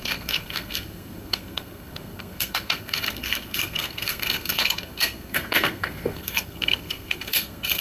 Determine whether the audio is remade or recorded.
remade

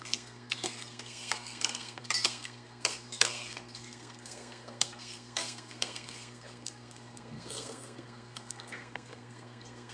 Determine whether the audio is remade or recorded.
remade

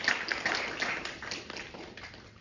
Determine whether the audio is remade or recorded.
recorded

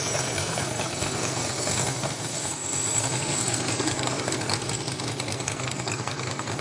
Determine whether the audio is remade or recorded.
remade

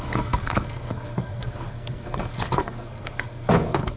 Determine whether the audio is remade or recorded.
remade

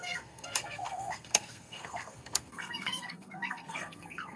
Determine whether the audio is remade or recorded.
remade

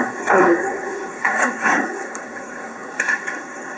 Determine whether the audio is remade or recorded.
remade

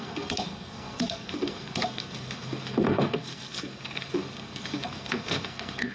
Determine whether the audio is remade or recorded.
remade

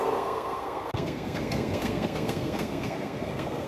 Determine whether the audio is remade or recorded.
remade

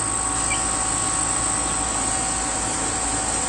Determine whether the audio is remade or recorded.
recorded